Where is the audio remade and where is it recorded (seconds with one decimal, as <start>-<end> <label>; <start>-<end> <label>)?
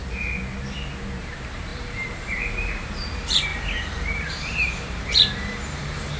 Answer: 0.0-1.2 recorded; 1.2-6.2 remade